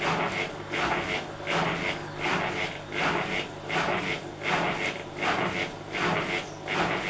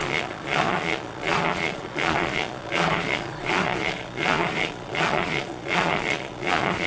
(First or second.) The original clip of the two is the first